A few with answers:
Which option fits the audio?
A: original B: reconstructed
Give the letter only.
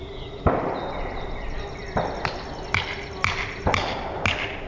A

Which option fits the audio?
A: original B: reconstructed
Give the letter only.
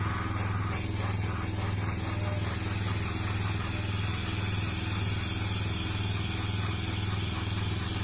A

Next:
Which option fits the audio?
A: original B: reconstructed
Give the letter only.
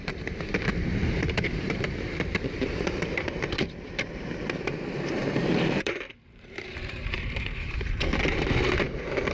B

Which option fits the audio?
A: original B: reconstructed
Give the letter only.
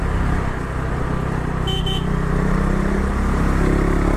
A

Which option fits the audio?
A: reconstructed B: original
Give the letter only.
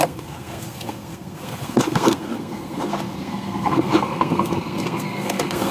A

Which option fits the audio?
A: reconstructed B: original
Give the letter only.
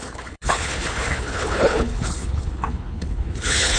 A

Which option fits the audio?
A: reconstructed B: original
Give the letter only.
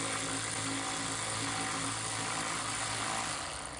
B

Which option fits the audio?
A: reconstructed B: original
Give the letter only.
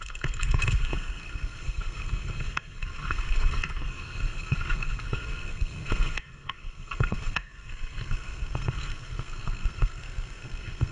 A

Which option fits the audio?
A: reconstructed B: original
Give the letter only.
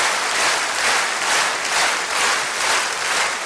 B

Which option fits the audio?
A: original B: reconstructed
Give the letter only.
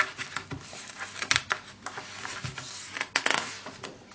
A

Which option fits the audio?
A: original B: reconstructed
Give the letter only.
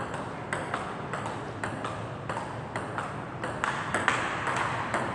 A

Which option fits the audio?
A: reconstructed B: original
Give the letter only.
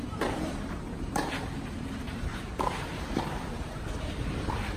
A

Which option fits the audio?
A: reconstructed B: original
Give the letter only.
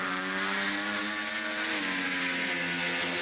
B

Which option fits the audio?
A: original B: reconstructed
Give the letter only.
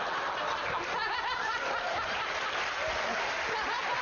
A